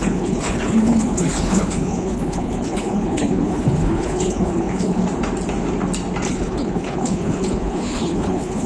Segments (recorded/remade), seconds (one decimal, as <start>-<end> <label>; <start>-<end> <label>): 0.0-5.0 remade; 5.0-6.3 recorded; 6.3-8.7 remade